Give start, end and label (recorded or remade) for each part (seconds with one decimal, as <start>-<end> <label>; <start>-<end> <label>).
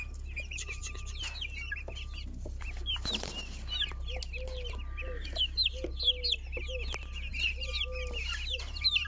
0.0-9.1 recorded